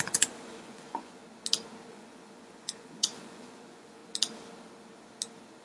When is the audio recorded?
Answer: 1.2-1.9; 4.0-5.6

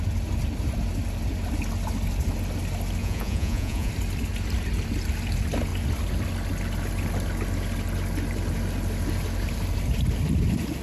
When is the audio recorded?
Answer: 0.0-3.0; 3.9-10.8

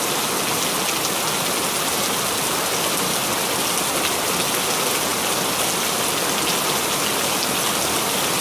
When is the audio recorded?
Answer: 0.0-8.4